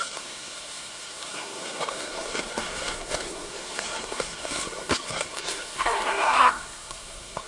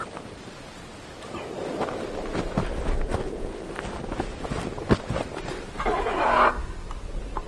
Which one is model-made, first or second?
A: first